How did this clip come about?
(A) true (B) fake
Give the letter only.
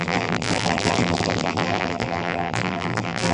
B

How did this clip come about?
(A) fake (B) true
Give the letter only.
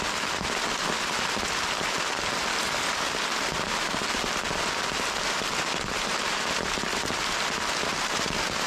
B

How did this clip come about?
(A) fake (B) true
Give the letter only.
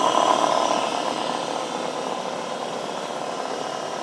B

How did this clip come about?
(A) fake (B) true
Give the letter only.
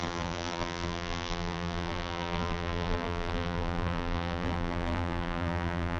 A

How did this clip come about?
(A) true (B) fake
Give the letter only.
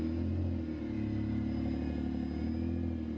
A